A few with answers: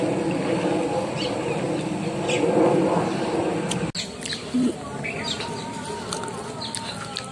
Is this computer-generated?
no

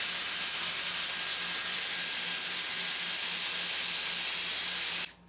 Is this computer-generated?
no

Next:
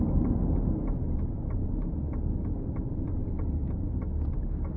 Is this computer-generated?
no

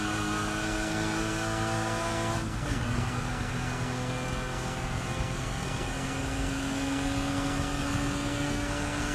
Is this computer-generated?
yes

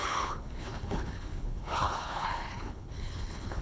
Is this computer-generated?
yes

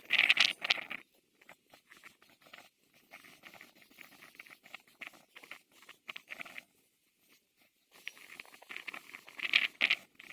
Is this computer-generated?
no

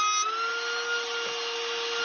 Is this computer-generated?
no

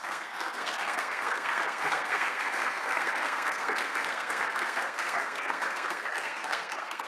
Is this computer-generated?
yes